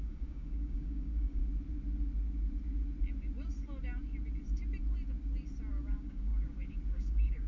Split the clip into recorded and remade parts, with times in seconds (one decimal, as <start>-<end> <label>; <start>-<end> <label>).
0.0-1.4 remade; 1.4-5.7 recorded; 5.7-6.3 remade; 6.3-6.9 recorded; 6.9-7.5 remade